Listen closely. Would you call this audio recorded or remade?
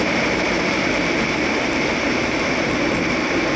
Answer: remade